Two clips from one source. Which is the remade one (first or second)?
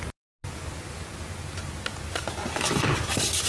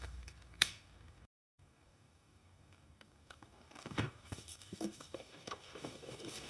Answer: second